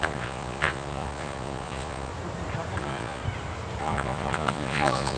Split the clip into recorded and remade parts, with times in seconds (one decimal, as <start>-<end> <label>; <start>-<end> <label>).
0.0-2.1 remade; 2.1-2.8 recorded; 2.8-3.2 remade; 3.2-3.8 recorded; 3.8-5.2 remade